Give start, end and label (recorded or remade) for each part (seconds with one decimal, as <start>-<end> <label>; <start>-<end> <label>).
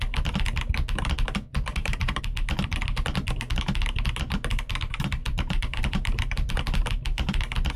0.0-1.5 recorded; 1.5-2.2 remade; 2.2-5.2 recorded; 5.2-6.6 remade; 6.6-7.8 recorded